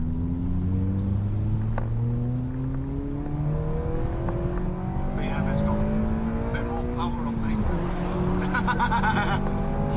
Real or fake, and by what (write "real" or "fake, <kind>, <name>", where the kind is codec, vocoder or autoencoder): real